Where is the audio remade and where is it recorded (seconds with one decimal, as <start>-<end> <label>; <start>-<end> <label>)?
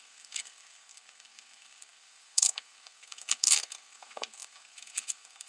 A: 0.0-5.5 remade